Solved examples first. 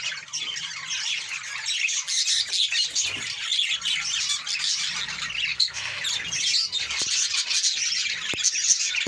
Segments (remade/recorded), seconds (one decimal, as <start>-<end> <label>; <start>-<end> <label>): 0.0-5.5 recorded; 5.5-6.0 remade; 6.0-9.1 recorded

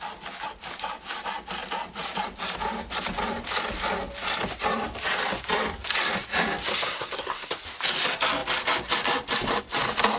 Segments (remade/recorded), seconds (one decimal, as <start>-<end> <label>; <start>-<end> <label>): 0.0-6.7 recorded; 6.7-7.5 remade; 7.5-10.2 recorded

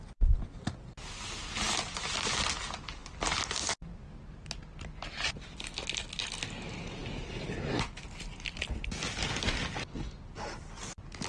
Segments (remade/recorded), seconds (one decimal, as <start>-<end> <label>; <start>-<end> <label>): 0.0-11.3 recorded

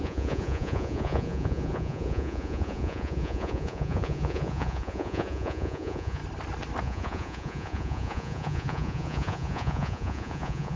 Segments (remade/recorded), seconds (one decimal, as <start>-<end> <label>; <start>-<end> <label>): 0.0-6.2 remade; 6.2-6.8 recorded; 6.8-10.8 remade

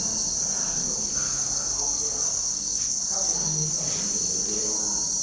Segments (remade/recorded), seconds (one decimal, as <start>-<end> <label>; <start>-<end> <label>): 0.0-0.6 recorded; 0.6-3.7 remade; 3.7-5.2 recorded

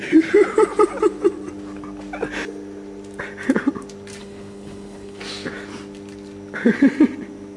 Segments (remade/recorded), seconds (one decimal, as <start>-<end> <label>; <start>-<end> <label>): 0.0-4.2 recorded; 4.2-5.2 remade; 5.2-7.6 recorded